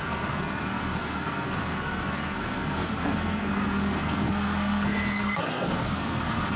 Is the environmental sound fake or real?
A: fake